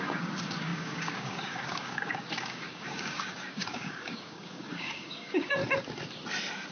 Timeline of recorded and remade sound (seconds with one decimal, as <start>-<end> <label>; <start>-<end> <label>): 0.0-5.6 remade; 5.6-6.7 recorded